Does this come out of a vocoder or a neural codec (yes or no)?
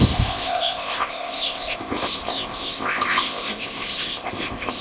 yes